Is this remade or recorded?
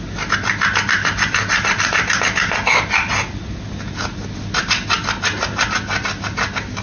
recorded